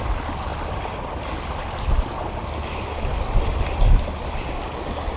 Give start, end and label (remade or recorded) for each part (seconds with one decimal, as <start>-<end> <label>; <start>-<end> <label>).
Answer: 0.0-5.2 recorded